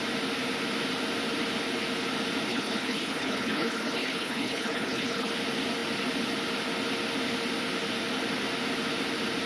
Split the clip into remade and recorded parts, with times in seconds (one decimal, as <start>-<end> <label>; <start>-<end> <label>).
0.0-2.5 recorded; 2.5-5.3 remade; 5.3-9.5 recorded